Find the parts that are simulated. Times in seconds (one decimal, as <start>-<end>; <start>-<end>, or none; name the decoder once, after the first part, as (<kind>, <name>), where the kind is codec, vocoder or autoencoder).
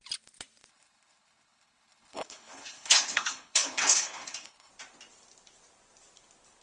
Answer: 0.7-4.7 (codec, HILCodec)